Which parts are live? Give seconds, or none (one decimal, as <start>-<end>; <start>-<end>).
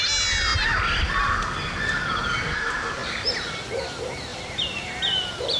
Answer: 0.0-4.3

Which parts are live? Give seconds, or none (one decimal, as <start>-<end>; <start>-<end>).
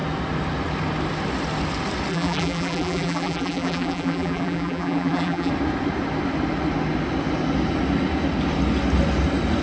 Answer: 0.0-2.1; 5.5-9.6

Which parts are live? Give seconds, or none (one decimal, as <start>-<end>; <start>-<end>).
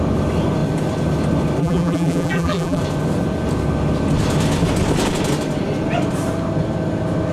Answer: 0.0-1.6; 2.8-7.3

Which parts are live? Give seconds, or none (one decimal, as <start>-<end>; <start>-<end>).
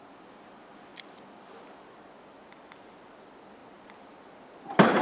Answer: 0.0-0.9; 1.5-5.0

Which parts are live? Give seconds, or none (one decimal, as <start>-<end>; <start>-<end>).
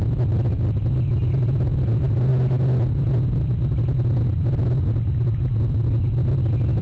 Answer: 0.0-6.8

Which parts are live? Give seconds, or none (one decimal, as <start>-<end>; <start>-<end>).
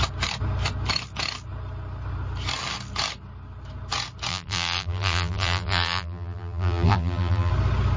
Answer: 0.0-4.3; 7.5-8.0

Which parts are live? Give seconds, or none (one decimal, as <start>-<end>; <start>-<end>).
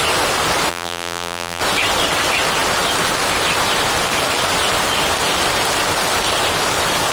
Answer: 0.0-0.7; 1.6-7.1